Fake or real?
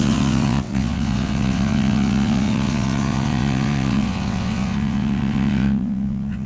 fake